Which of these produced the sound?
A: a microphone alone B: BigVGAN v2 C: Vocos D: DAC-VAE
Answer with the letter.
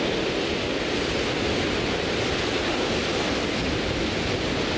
A